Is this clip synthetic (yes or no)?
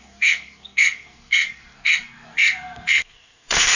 yes